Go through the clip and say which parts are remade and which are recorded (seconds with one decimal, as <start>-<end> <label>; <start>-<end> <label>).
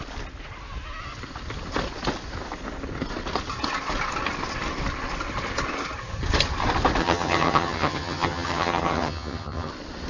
0.0-7.0 recorded; 7.0-9.7 remade; 9.7-10.1 recorded